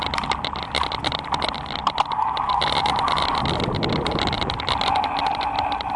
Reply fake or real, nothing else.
real